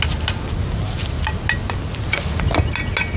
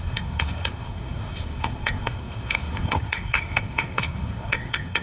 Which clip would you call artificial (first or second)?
second